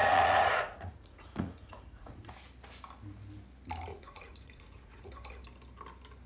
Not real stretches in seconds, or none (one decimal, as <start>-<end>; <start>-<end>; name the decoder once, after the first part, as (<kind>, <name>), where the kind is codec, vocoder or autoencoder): 0.0-2.3 (vocoder, Vocos); 3.9-5.1